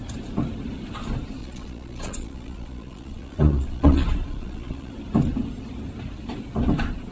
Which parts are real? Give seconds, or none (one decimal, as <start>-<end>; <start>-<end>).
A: 0.0-1.4; 4.9-7.1

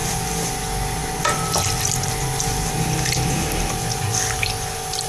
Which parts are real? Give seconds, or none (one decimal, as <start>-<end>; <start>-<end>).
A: 0.0-5.1

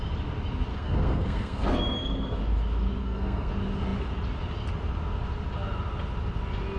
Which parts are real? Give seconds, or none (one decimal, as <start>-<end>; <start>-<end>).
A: 0.0-0.7; 2.4-3.0; 3.5-6.8

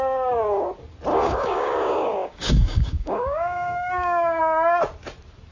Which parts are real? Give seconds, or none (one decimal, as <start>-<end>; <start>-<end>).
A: 0.0-1.1; 4.4-5.5

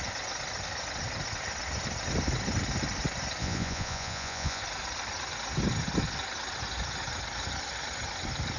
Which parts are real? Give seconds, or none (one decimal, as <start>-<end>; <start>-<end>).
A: 0.0-3.4; 4.6-8.6